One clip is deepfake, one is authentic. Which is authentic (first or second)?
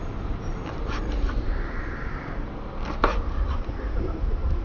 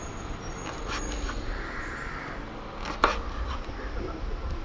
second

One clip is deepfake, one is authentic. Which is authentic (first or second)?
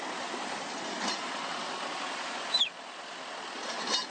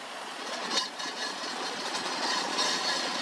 first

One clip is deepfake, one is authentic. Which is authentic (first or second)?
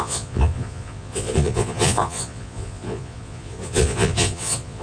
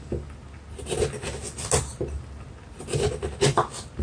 second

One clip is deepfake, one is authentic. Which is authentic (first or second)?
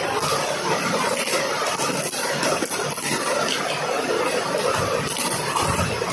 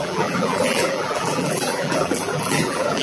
first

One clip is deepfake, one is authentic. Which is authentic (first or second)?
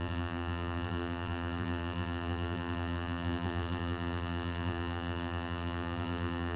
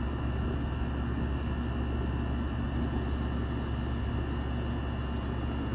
second